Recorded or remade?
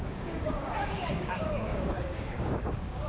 remade